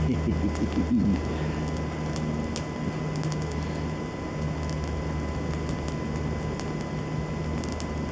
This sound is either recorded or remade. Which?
recorded